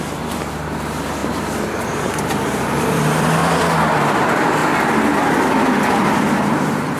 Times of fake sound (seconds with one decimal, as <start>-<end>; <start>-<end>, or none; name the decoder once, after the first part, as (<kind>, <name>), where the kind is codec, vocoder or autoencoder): 0.0-3.4 (vocoder, BigVGAN v2); 4.1-4.6